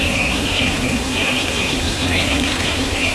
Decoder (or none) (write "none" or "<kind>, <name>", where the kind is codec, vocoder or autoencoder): codec, SNAC